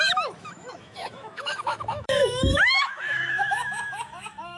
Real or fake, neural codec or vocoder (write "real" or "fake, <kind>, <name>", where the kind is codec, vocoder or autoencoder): fake, autoencoder, DAC-VAE